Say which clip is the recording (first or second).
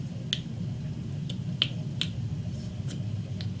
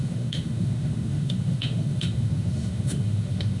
first